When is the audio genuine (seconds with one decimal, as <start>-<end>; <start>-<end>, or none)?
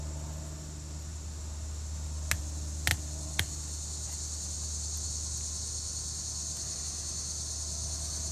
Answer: 0.0-8.3